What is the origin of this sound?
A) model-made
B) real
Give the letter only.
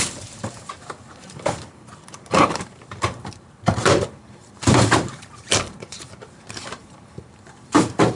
A